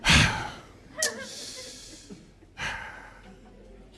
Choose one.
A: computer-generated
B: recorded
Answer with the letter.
B